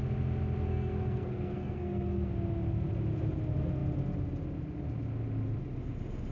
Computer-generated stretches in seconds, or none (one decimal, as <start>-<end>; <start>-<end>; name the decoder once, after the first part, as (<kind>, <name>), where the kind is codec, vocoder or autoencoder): 0.7-2.3 (codec, SNAC)